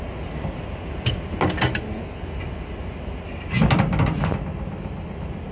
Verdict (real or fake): real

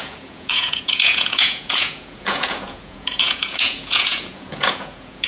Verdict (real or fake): fake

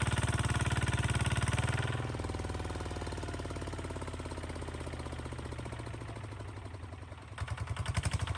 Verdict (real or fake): real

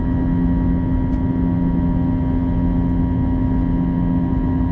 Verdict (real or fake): real